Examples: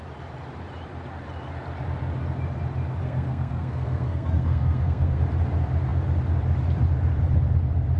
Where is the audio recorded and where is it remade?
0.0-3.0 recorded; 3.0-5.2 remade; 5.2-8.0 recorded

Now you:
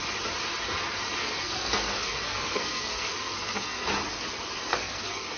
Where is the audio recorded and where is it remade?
0.0-1.2 recorded; 1.2-3.9 remade; 3.9-4.7 recorded; 4.7-5.4 remade

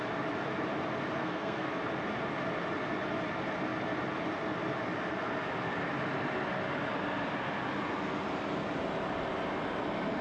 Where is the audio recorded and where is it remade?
0.0-1.2 recorded; 1.2-1.7 remade; 1.7-10.2 recorded